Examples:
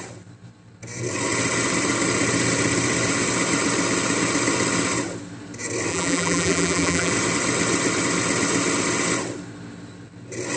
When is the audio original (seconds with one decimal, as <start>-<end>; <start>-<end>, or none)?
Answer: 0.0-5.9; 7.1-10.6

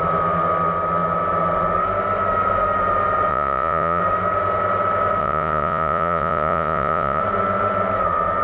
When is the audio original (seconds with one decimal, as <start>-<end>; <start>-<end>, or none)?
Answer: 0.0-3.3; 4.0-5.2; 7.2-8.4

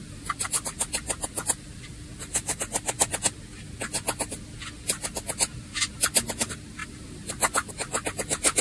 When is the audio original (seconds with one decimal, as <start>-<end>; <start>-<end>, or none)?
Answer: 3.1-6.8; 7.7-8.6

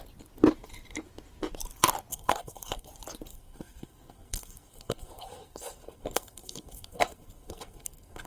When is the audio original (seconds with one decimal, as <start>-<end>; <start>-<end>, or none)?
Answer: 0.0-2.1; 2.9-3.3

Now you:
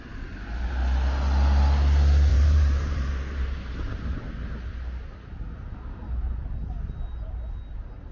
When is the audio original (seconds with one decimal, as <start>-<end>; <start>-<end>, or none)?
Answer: 0.0-2.3; 4.3-8.1

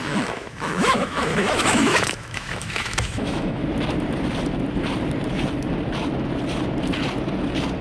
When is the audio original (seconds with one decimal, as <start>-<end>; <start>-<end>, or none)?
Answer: 3.6-7.8

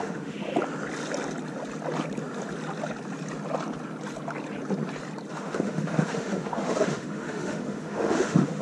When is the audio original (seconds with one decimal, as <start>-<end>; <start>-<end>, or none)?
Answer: 0.5-5.3

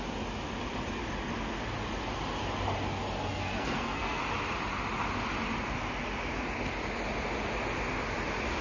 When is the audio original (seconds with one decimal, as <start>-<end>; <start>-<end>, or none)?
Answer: 0.0-3.3; 4.2-8.6